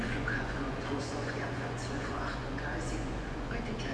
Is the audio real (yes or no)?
no